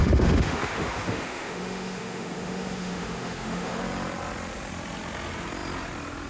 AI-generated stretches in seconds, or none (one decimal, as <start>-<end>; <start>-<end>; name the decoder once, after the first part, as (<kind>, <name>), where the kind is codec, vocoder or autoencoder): 0.0-3.8 (autoencoder, DAC-VAE)